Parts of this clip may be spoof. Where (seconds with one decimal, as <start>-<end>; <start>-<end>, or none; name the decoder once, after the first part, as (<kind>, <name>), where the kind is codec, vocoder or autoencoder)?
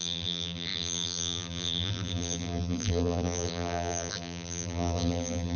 0.0-5.6 (vocoder, BigVGAN v2)